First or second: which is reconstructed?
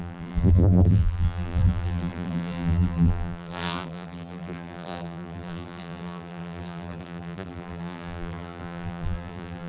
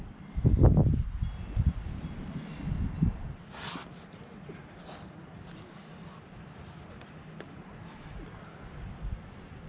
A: first